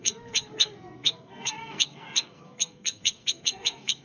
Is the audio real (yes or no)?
no